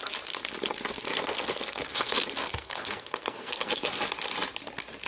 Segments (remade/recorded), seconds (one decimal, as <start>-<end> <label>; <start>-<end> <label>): 0.0-0.9 recorded; 0.9-4.0 remade; 4.0-5.1 recorded

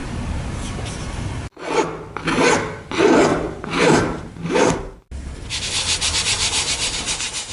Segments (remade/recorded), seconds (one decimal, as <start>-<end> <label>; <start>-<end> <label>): 0.0-0.8 remade; 0.8-3.3 recorded; 3.3-5.0 remade; 5.0-7.5 recorded

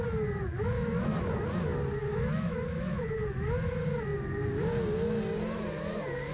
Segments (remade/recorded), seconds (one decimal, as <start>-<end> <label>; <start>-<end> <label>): 0.0-2.1 recorded; 2.1-3.5 remade; 3.5-6.3 recorded

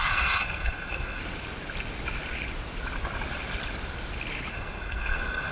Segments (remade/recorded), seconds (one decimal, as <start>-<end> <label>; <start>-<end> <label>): 0.0-1.2 remade; 1.2-4.5 recorded; 4.5-5.5 remade

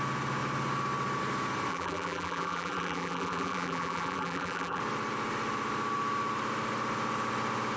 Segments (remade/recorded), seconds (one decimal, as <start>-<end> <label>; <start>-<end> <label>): 0.0-1.7 recorded; 1.7-4.8 remade; 4.8-7.8 recorded

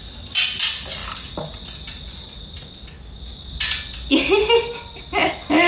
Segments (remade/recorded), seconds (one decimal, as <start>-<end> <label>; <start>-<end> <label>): 0.0-5.7 recorded